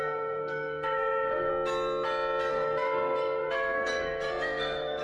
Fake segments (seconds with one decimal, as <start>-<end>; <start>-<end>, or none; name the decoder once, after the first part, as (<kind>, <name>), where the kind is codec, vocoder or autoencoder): 0.0-1.5 (codec, SNAC); 2.5-5.0

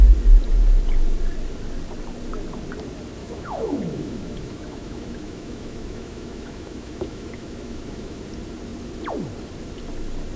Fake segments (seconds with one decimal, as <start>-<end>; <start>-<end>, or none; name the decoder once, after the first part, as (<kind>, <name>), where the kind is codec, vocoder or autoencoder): 3.2-8.2 (autoencoder, DAC-VAE)

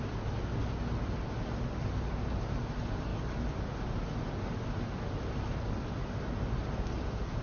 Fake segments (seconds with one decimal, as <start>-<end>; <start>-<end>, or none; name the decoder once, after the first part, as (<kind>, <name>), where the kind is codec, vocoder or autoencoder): none